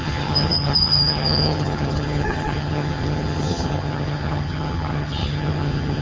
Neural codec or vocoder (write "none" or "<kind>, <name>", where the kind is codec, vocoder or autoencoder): vocoder, HiFi-GAN